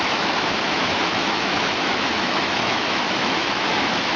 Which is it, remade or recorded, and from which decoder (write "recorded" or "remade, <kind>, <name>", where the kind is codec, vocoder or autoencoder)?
remade, autoencoder, DAC-VAE